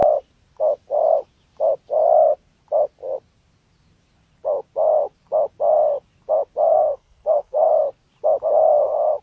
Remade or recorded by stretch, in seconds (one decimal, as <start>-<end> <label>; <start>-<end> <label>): 0.0-6.7 recorded; 6.7-7.7 remade; 7.7-9.2 recorded